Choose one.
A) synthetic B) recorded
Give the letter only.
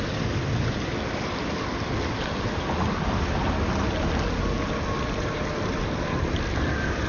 B